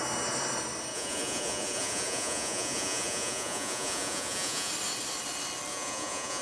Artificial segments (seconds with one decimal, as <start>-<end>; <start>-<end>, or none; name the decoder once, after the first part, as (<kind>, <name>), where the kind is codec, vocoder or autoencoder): 0.9-4.7 (vocoder, Vocos); 5.7-6.4